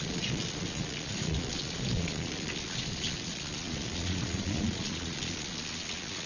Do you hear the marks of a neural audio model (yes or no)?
yes